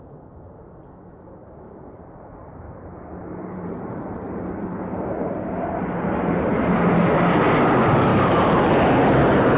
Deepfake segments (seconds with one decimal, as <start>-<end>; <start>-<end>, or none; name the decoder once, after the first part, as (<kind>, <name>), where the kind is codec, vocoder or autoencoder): 1.4-4.4 (vocoder, BigVGAN v2); 5.2-7.4; 8.1-8.7